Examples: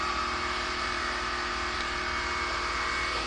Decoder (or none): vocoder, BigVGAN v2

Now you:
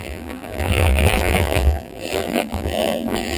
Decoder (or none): vocoder, BigVGAN v2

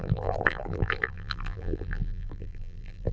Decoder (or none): vocoder, BigVGAN v2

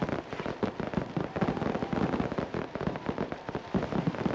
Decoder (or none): vocoder, BigVGAN v2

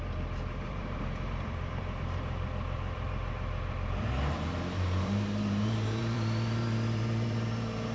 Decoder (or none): vocoder, BigVGAN v2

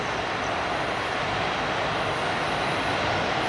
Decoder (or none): none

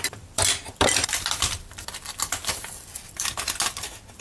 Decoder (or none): vocoder, BigVGAN v2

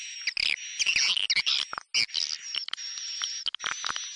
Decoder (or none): none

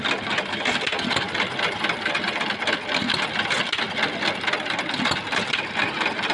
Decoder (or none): none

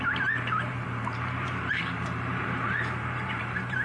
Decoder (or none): vocoder, BigVGAN v2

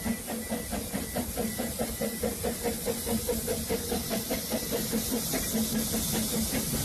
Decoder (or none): none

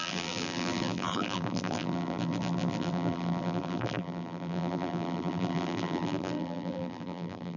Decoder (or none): vocoder, BigVGAN v2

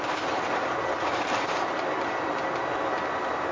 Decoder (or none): none